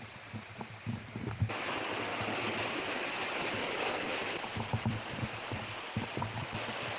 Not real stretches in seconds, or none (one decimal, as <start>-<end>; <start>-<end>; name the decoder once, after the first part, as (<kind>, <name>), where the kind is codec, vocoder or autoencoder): 0.0-2.1 (vocoder, BigVGAN v2); 2.6-7.0